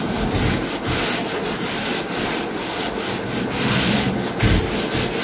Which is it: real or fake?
real